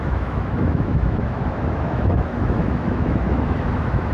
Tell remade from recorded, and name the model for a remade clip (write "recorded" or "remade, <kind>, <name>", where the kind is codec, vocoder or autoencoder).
remade, autoencoder, DAC-VAE